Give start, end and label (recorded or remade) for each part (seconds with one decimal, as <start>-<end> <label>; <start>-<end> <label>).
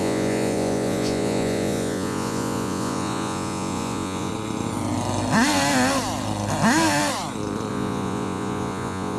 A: 0.0-4.3 remade; 4.3-7.7 recorded; 7.7-9.2 remade